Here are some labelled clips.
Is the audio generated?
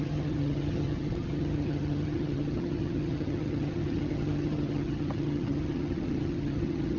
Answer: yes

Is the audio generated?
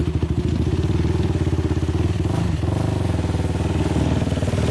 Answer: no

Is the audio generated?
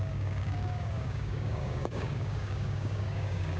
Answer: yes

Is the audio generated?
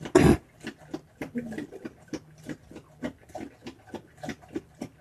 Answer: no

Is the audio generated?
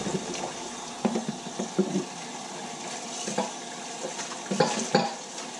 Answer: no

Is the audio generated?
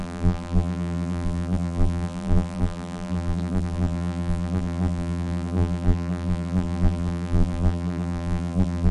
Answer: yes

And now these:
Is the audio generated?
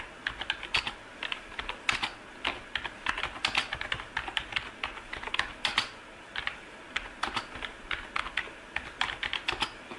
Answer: no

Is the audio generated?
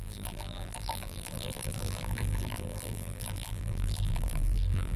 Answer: yes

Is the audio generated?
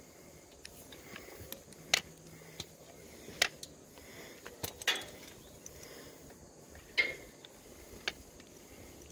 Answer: no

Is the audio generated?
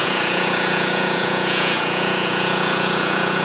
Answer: yes